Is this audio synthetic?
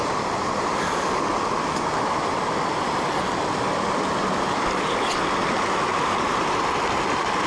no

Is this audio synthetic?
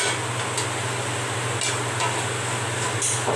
no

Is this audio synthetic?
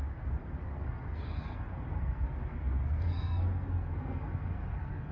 yes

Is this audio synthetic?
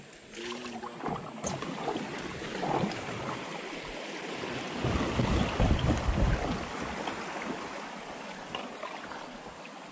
no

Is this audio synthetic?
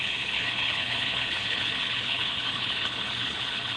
yes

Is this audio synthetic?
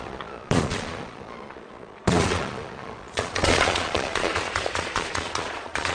yes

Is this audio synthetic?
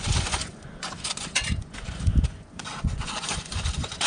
yes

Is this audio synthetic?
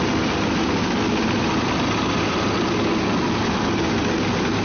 no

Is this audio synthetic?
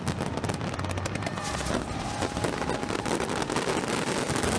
no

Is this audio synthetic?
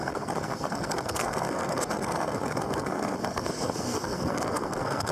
yes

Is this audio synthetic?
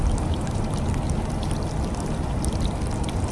no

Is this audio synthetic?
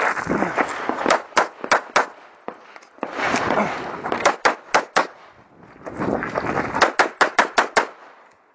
no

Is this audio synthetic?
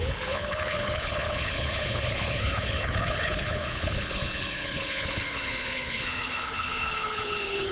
yes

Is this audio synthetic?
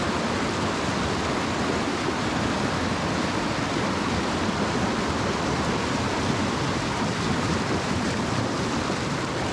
no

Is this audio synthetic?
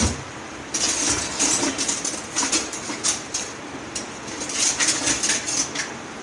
no